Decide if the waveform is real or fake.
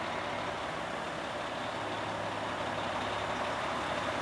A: real